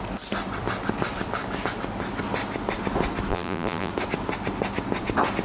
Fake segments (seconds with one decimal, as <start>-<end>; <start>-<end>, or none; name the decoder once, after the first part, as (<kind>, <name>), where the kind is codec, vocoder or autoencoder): 3.3-3.9 (vocoder, BigVGAN v2)